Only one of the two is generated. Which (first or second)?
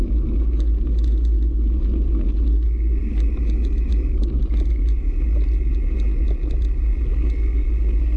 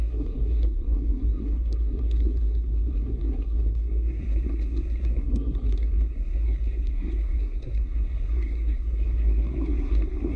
second